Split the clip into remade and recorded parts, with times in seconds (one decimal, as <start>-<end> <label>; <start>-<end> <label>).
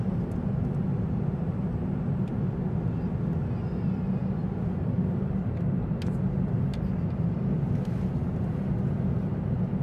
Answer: 0.0-9.8 recorded